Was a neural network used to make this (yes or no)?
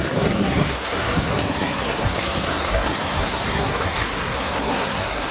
yes